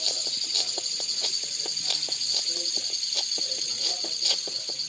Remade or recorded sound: recorded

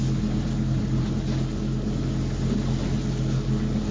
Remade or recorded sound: recorded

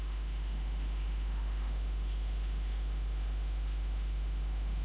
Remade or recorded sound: remade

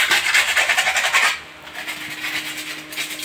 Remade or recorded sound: recorded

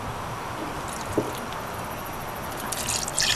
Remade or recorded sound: recorded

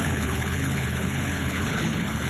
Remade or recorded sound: remade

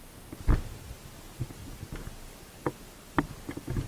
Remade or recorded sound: recorded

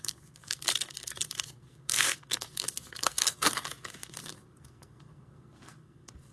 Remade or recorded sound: remade